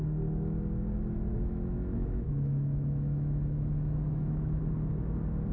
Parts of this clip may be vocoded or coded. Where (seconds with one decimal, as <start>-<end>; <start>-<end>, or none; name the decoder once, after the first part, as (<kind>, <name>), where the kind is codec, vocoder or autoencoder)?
1.3-4.6 (autoencoder, DAC-VAE)